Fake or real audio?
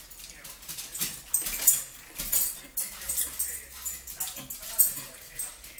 real